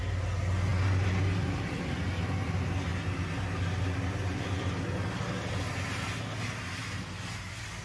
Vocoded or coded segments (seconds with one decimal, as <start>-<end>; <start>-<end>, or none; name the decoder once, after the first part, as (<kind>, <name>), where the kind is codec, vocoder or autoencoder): 0.7-1.8 (vocoder, BigVGAN v2)

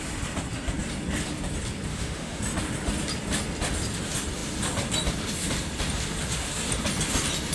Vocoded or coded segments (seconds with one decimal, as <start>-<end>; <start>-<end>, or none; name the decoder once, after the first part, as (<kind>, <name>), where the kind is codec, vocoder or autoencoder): 1.9-2.4 (autoencoder, DAC-VAE)